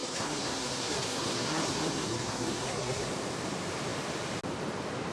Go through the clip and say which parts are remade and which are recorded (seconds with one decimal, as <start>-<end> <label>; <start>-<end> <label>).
0.0-3.1 remade; 3.1-5.1 recorded